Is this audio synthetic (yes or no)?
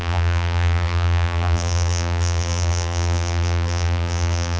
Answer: yes